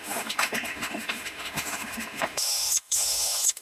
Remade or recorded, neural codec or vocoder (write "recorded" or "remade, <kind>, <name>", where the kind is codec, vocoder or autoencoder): remade, autoencoder, DAC-VAE